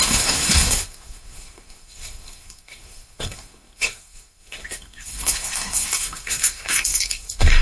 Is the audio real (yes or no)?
no